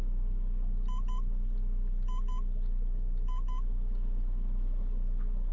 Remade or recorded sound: recorded